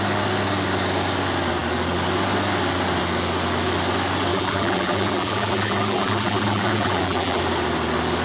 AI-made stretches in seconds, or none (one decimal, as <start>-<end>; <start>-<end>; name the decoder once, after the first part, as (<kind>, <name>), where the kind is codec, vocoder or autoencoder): 4.3-7.4 (vocoder, BigVGAN v2)